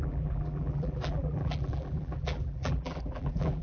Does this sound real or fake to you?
fake